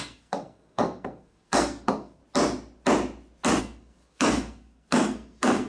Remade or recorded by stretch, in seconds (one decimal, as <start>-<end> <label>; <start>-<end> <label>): 0.0-2.2 remade; 2.2-3.6 recorded; 3.6-5.7 remade